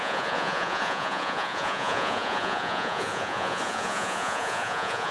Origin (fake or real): fake